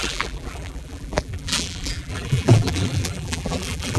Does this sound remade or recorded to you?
remade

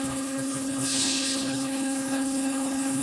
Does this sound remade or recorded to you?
remade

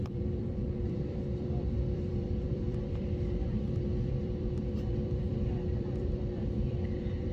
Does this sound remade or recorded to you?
remade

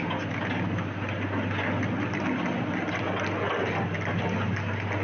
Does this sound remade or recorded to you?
recorded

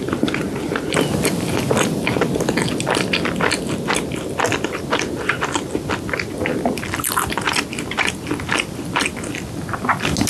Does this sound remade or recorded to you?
recorded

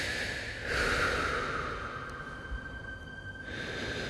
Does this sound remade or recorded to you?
recorded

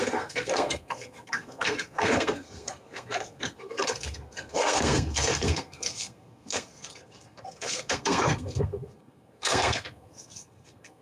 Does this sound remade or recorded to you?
remade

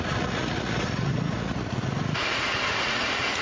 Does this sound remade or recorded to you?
remade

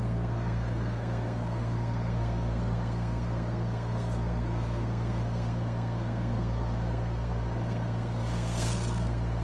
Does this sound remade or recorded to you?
remade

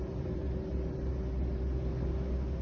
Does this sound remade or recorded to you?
recorded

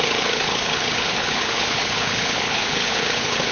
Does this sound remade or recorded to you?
remade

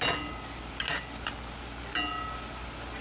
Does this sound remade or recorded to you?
recorded